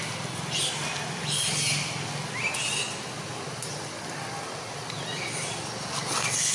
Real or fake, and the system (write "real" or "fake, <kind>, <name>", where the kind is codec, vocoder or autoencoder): real